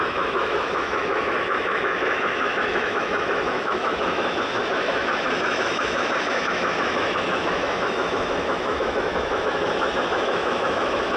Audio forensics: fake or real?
fake